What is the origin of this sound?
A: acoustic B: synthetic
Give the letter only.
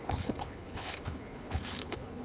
B